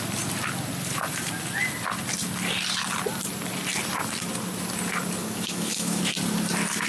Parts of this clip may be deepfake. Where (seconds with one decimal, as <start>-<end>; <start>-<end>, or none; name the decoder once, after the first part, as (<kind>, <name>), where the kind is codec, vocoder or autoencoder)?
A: 5.2-6.0 (autoencoder, DAC-VAE)

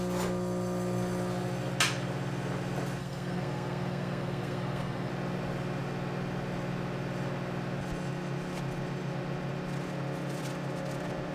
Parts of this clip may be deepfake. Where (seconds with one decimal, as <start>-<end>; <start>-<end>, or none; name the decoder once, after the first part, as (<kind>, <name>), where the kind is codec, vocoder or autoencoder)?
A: 3.0-5.1 (codec, SNAC)

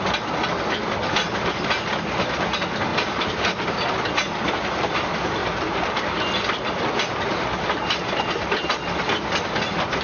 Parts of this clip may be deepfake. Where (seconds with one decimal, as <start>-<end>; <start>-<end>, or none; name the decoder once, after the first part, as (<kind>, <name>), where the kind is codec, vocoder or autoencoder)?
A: none

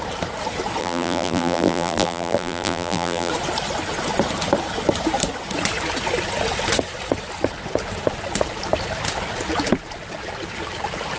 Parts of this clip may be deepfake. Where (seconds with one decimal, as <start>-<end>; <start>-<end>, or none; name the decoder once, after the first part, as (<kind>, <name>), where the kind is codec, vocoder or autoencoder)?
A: 0.8-3.3 (vocoder, BigVGAN v2)